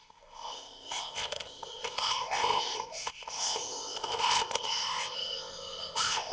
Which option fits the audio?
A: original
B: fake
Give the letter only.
B